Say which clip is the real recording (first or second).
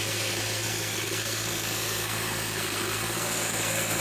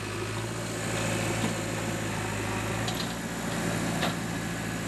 second